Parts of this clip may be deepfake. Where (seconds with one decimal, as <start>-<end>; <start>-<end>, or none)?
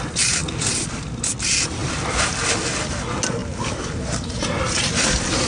0.4-1.2; 1.8-2.6